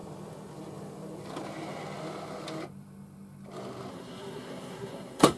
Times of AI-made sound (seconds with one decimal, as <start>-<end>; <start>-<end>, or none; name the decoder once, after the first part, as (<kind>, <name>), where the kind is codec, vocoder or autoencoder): 3.9-5.4 (codec, SNAC)